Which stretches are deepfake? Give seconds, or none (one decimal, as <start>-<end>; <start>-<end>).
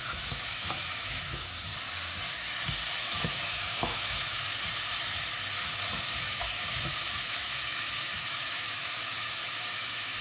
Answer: 0.0-1.7; 3.0-4.6; 6.2-10.2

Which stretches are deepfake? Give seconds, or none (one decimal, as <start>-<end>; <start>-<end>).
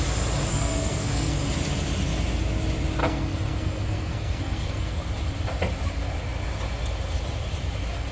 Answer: 0.5-1.4; 3.0-5.0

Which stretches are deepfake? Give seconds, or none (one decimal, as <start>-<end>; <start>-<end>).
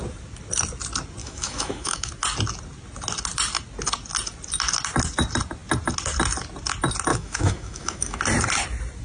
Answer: 1.2-2.1; 7.1-8.2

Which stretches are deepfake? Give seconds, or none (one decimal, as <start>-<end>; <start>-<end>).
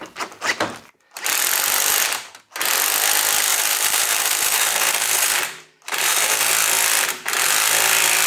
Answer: 3.5-6.5